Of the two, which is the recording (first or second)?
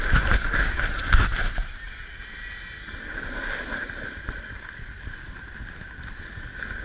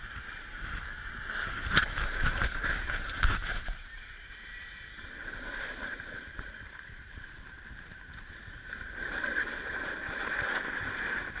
first